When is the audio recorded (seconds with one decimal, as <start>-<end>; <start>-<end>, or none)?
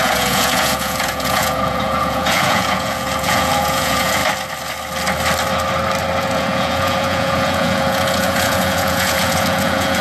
4.2-6.2